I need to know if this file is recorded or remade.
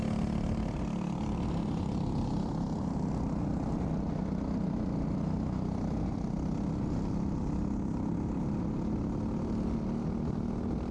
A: recorded